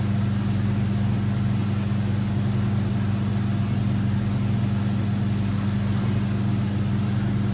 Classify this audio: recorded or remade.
recorded